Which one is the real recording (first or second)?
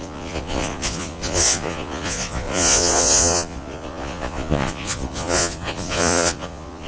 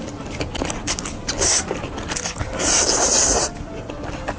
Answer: second